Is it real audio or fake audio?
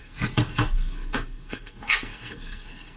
fake